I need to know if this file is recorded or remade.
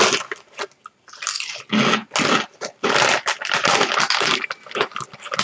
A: recorded